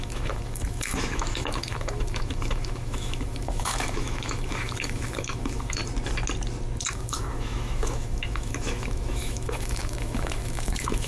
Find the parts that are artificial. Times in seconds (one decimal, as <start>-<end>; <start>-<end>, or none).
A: 0.0-5.8; 6.9-11.1